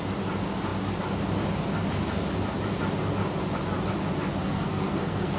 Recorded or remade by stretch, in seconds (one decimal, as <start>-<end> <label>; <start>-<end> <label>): 0.0-4.4 recorded; 4.4-5.4 remade